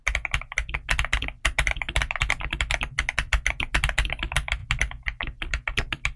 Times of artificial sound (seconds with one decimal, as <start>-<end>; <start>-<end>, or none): none